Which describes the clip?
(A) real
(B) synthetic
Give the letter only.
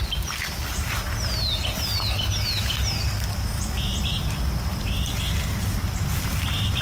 A